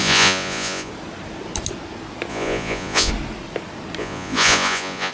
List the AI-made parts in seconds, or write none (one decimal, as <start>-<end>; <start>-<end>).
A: 0.0-0.9; 2.3-3.1; 4.0-5.1